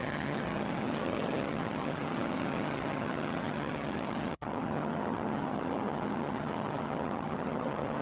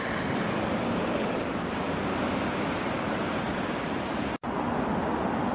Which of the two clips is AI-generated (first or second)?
first